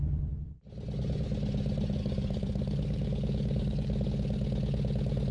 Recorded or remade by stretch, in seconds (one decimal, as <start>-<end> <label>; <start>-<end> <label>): 0.0-2.0 recorded; 2.0-4.1 remade; 4.1-5.3 recorded